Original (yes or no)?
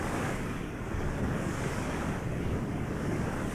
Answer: no